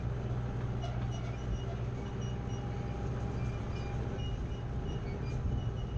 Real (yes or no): yes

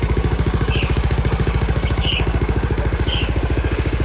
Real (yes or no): no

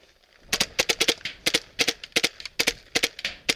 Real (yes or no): yes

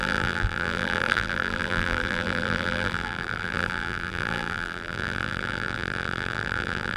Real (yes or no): no